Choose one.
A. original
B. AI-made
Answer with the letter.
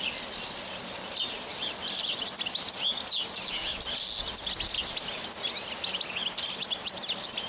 A